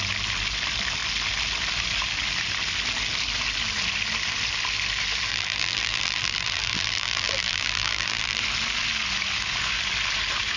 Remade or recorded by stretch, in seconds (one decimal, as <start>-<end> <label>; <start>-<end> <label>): 0.0-5.3 recorded; 5.3-8.4 remade; 8.4-10.6 recorded